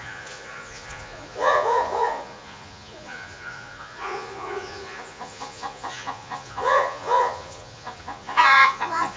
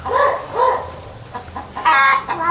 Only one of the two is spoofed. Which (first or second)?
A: first